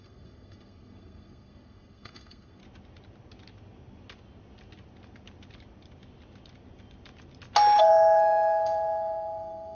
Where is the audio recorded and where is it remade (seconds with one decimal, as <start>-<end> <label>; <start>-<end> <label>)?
0.0-2.6 remade; 2.6-7.8 recorded; 7.8-9.7 remade